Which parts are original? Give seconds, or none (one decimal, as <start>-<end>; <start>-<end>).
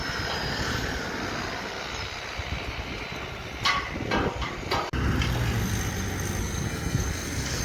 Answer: 0.0-6.4